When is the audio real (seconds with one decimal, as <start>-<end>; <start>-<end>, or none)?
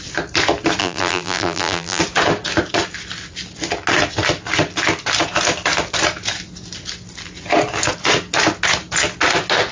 0.0-0.8; 2.0-9.7